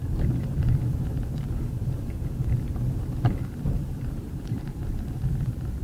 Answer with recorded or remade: remade